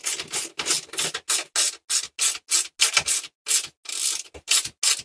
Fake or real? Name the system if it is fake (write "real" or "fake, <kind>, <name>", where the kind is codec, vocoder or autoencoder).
real